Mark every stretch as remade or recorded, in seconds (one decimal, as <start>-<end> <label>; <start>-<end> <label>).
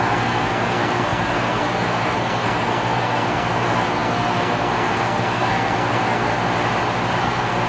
0.0-6.3 remade; 6.3-7.2 recorded; 7.2-7.7 remade